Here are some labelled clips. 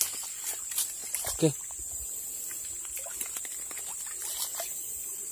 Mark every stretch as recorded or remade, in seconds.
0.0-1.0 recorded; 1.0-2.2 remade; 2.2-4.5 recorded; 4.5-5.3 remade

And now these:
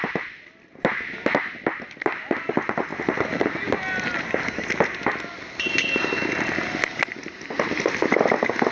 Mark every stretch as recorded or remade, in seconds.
0.0-8.7 recorded

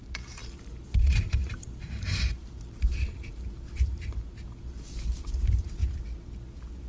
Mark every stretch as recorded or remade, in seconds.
0.0-5.8 remade; 5.8-6.9 recorded